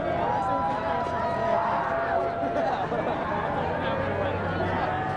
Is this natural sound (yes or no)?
yes